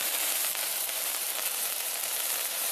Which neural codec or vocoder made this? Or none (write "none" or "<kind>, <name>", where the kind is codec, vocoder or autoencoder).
vocoder, BigVGAN v2